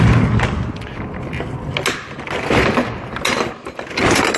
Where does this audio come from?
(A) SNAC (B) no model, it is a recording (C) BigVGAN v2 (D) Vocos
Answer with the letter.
B